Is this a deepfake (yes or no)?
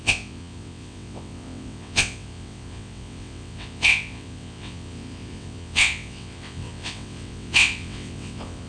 yes